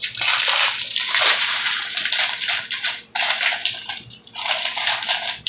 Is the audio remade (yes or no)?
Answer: yes